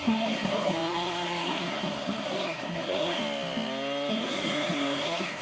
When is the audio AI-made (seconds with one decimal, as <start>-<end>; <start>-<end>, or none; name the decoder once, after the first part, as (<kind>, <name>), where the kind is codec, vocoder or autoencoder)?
0.0-3.2 (codec, SNAC); 4.1-5.4